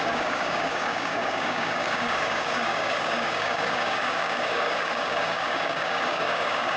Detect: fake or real fake